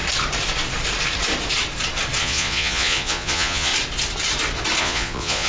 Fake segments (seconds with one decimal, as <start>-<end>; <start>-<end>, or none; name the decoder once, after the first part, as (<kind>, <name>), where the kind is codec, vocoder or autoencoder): 2.2-3.7 (vocoder, Vocos); 4.8-5.5